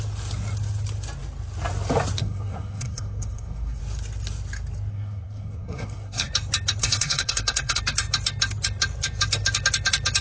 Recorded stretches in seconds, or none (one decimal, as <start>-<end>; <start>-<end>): 0.0-2.2; 3.8-4.9; 6.3-6.8; 7.8-10.2